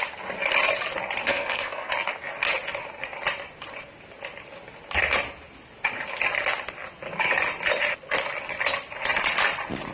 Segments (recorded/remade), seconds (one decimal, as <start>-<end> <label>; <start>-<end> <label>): 0.0-1.3 recorded; 1.3-1.9 remade; 1.9-9.9 recorded